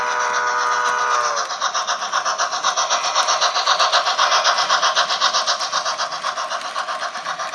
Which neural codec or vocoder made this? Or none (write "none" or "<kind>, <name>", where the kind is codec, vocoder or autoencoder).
none